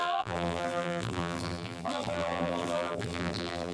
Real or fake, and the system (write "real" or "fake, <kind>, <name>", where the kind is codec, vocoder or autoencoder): fake, vocoder, BigVGAN v2